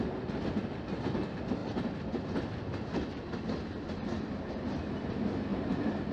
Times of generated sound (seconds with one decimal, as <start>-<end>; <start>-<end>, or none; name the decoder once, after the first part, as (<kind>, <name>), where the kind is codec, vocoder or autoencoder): 5.5-6.1 (vocoder, BigVGAN v2)